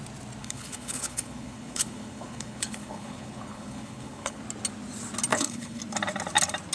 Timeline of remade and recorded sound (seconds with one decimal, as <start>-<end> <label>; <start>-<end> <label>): 0.0-0.4 recorded; 0.4-4.4 remade; 4.4-5.3 recorded; 5.3-5.8 remade; 5.8-6.7 recorded